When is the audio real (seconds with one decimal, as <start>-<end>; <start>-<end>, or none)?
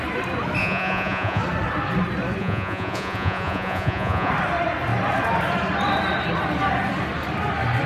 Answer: 0.0-0.6; 1.4-2.4; 4.3-7.9